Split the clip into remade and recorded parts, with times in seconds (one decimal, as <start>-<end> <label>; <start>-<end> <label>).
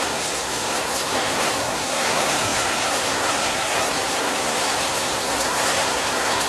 0.0-6.5 remade